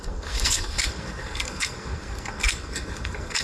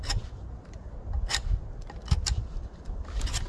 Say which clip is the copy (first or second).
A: first